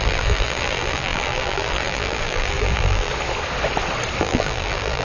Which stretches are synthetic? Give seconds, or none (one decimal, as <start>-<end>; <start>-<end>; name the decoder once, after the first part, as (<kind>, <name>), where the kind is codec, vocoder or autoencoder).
0.0-3.1 (vocoder, BigVGAN v2); 4.2-5.0

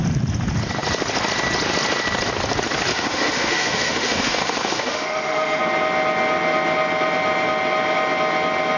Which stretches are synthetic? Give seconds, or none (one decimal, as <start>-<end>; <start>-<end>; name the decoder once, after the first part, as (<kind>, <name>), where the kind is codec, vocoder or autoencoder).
2.9-5.6 (autoencoder, DAC-VAE)

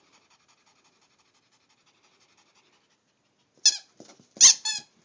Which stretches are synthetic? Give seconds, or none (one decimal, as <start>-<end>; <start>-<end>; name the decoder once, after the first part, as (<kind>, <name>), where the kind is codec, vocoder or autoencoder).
none

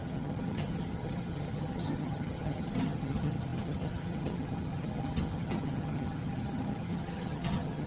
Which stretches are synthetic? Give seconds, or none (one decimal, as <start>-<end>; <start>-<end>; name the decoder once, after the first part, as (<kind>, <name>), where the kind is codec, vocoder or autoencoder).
0.0-7.9 (vocoder, HiFi-GAN)

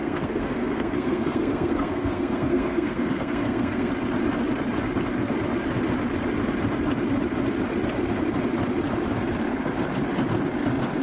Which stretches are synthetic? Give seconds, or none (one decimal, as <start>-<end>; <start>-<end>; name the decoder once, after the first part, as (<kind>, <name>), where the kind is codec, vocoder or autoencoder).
0.0-3.9 (codec, SNAC)

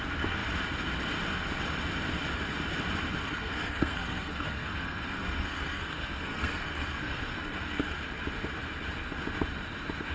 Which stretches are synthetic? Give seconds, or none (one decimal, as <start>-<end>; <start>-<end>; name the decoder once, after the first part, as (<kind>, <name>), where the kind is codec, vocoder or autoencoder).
3.2-8.0 (codec, SNAC)

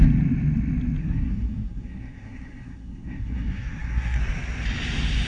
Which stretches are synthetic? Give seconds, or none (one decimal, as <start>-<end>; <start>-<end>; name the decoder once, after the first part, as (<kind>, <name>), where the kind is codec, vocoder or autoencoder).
1.0-4.2 (codec, SNAC)

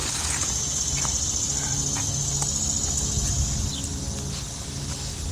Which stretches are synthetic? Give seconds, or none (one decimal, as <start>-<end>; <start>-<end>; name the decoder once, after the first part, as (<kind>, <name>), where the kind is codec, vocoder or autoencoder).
0.0-0.8 (vocoder, Vocos)